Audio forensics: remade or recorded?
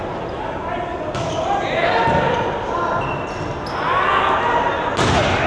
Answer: recorded